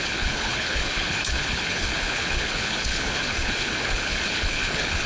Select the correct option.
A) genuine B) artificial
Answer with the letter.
B